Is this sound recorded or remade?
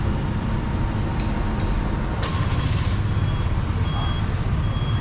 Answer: recorded